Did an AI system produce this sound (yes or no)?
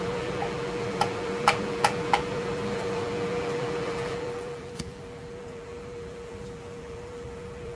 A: yes